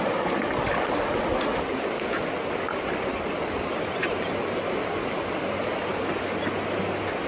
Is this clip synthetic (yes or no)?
no